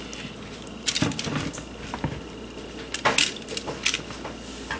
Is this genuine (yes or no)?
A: yes